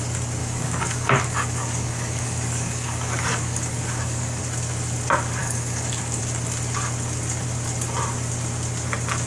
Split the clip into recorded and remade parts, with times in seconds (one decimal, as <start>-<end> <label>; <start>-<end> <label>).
0.0-0.4 recorded; 0.4-4.4 remade; 4.4-5.4 recorded; 5.4-6.2 remade; 6.2-9.3 recorded